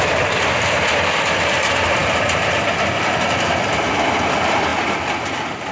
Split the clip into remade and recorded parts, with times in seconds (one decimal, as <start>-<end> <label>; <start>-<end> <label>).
0.0-5.7 recorded